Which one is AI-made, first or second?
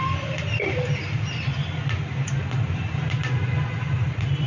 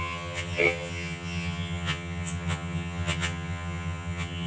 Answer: second